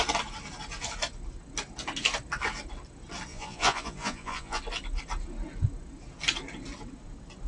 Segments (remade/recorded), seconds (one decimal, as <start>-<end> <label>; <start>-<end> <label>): 0.0-3.3 recorded; 3.3-4.6 remade; 4.6-7.5 recorded